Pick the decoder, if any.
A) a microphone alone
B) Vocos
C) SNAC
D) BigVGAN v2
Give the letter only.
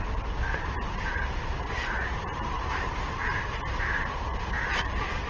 D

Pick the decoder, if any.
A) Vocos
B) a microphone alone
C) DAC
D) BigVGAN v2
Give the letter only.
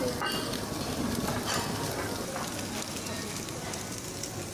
B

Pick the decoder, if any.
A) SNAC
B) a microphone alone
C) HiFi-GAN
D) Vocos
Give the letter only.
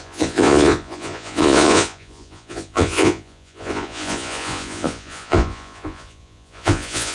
D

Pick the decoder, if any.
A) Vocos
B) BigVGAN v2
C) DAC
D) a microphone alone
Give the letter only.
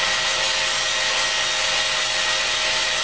D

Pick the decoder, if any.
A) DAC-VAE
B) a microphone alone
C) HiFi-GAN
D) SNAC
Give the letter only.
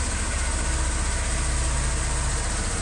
B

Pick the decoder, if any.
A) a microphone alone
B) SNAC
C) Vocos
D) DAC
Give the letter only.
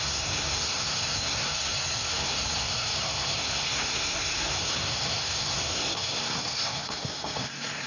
B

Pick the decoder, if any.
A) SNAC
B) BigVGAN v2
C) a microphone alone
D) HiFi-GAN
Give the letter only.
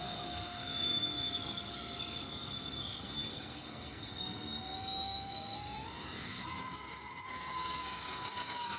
A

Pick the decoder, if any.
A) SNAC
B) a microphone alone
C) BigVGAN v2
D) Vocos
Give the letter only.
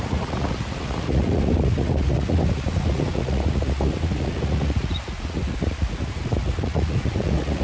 D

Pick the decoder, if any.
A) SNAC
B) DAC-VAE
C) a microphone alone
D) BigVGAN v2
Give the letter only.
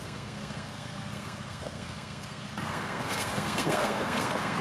A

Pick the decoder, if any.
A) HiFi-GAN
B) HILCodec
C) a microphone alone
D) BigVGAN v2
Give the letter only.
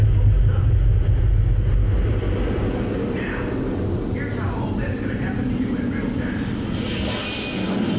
C